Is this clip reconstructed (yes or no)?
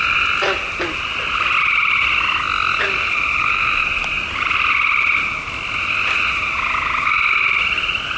no